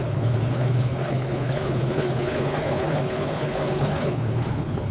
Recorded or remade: remade